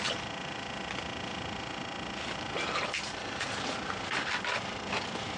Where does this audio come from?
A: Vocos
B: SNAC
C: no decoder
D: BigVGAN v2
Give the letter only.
C